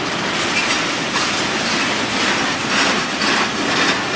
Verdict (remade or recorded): recorded